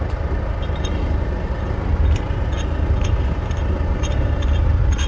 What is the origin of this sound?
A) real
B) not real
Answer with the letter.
A